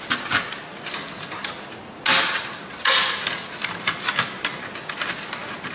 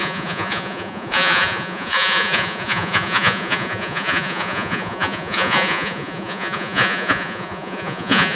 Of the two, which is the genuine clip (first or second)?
first